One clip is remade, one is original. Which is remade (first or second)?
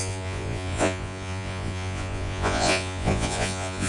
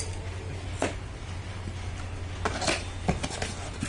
first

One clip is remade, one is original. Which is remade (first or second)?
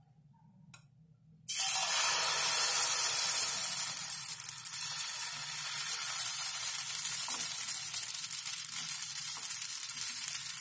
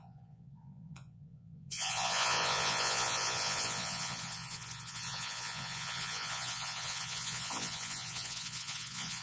second